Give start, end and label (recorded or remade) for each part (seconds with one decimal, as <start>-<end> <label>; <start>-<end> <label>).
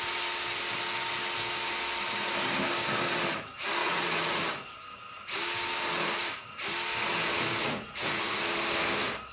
0.0-3.8 recorded; 3.8-4.4 remade; 4.4-7.6 recorded; 7.6-8.4 remade; 8.4-9.3 recorded